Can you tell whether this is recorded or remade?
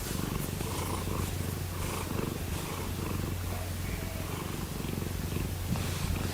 recorded